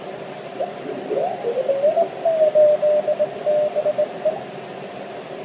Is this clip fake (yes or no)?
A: no